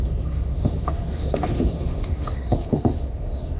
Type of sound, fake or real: fake